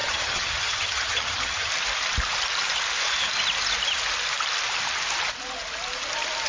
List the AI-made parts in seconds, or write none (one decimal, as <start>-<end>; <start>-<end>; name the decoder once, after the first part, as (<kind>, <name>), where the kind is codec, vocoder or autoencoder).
0.0-1.7 (vocoder, HiFi-GAN)